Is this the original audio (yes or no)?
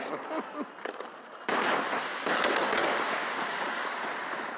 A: yes